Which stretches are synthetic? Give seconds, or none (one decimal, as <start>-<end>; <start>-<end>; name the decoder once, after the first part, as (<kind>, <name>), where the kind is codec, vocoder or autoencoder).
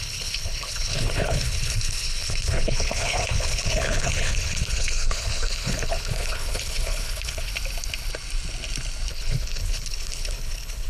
0.0-7.5 (codec, HILCodec); 9.1-10.9